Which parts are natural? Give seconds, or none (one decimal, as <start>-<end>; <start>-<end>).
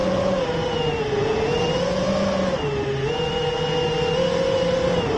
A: 0.0-5.2